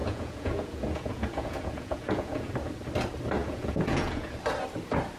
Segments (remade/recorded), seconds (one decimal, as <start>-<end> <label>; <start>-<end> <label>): 0.0-2.5 remade; 2.5-3.4 recorded; 3.4-4.4 remade; 4.4-5.2 recorded